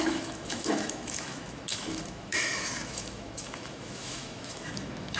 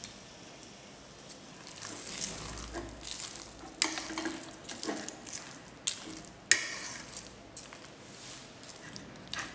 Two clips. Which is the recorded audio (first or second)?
second